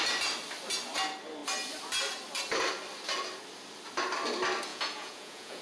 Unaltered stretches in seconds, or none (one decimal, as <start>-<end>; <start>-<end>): 0.0-4.7